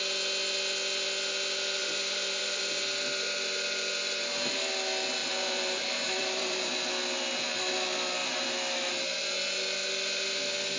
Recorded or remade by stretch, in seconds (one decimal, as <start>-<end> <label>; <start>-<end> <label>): 0.0-1.8 recorded; 1.8-2.6 remade; 2.6-5.2 recorded; 5.2-6.7 remade; 6.7-10.8 recorded

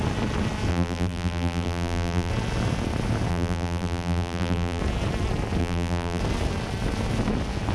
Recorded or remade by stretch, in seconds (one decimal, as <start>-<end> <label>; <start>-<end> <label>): 0.0-0.7 recorded; 0.7-2.3 remade; 2.3-3.3 recorded; 3.3-4.8 remade; 4.8-5.6 recorded; 5.6-6.2 remade; 6.2-7.7 recorded